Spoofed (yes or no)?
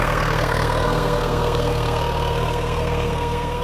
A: yes